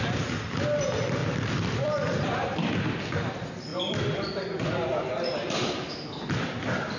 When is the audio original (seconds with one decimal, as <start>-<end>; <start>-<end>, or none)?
0.0-1.2; 2.7-3.7; 5.7-7.0